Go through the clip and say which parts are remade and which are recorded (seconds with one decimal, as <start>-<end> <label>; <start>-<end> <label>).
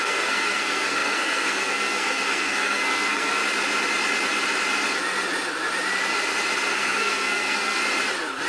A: 0.0-3.4 remade; 3.4-6.7 recorded; 6.7-7.8 remade; 7.8-8.5 recorded